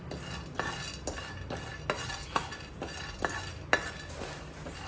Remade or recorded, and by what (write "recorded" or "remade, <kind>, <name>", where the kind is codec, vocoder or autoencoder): recorded